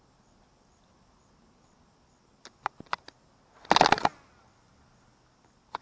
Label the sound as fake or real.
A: real